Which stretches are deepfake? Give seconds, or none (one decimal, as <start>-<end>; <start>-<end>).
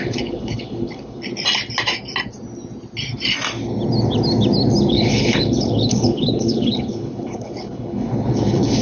0.0-1.3; 4.9-8.8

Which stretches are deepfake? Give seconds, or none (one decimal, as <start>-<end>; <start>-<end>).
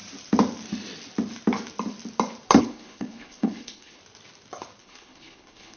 2.6-4.0; 4.8-5.8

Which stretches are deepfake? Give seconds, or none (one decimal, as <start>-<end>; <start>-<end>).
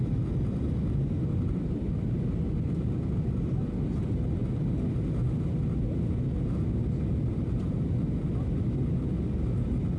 none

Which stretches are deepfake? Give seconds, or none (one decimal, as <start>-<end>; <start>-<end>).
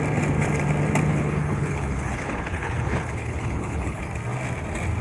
1.1-4.0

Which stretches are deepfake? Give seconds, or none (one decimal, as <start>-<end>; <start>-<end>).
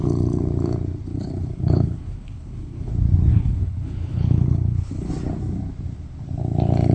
1.1-2.9; 3.3-5.1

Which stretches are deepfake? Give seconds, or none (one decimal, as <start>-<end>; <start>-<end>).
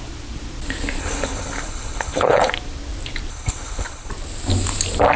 1.0-2.5; 3.3-4.1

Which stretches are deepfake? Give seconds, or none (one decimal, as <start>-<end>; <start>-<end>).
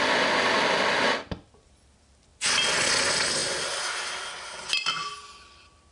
none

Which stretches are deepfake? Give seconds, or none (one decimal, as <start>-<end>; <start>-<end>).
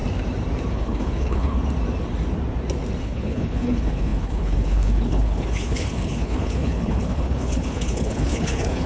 0.7-1.6; 3.0-8.9